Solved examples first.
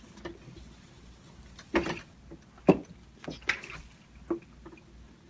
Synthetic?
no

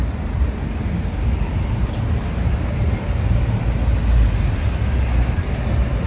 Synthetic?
no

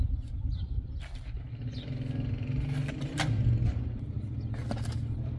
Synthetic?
no